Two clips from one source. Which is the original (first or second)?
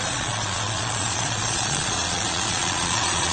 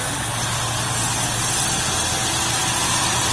second